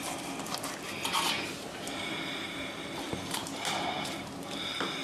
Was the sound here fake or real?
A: fake